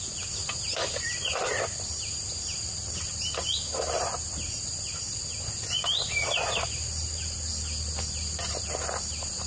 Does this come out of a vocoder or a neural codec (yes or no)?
no